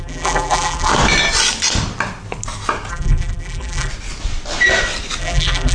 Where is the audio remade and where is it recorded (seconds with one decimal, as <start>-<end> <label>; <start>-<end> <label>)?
0.0-0.9 remade; 0.9-2.9 recorded; 2.9-3.9 remade; 3.9-5.2 recorded; 5.2-5.7 remade